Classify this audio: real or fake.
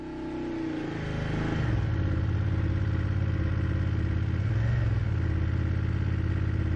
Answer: real